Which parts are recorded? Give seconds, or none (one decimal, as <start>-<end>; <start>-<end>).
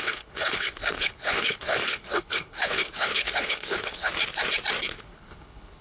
4.1-4.9